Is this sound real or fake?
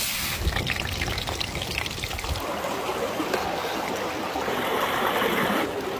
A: real